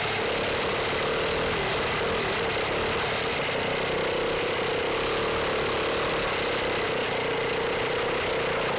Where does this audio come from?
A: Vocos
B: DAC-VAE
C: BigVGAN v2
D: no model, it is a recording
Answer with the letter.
D